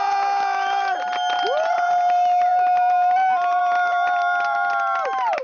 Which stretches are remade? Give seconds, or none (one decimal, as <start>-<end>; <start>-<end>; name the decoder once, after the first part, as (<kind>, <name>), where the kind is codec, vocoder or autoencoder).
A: none